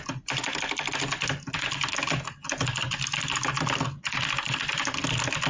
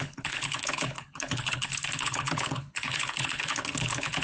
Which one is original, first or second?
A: first